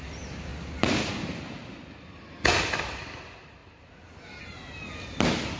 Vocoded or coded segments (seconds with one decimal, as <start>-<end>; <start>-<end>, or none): none